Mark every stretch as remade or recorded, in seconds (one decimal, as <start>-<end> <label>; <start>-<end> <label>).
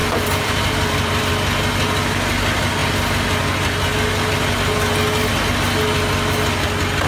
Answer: 0.0-1.3 remade; 1.3-7.1 recorded